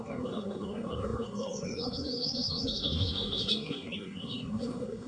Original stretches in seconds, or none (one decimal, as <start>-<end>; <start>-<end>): none